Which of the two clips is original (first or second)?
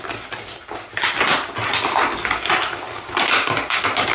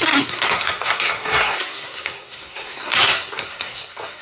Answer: first